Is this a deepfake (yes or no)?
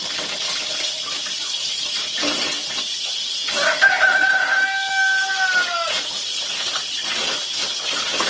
no